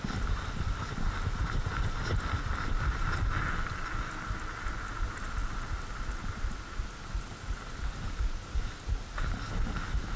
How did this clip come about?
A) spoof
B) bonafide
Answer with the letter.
B